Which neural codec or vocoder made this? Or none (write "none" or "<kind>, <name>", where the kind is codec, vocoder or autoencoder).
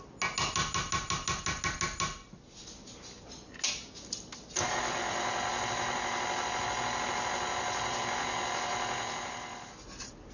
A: none